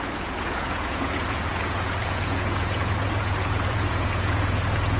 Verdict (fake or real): fake